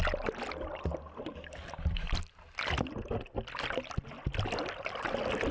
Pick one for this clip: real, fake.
real